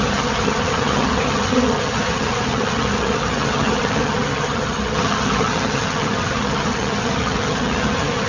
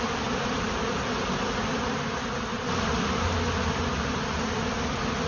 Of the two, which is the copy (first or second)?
first